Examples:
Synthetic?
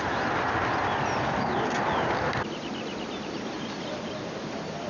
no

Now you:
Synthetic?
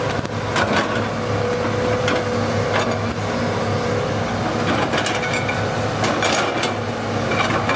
no